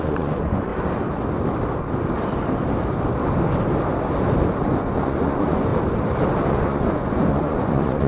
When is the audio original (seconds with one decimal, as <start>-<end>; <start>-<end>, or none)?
0.7-4.6; 5.7-6.5